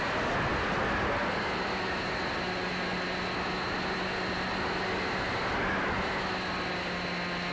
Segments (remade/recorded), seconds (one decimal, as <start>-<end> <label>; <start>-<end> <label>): 0.0-7.5 recorded